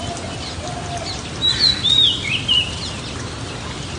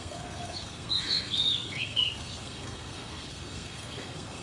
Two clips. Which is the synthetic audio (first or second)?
second